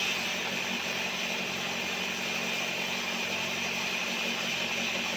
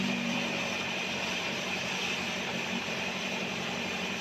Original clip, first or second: first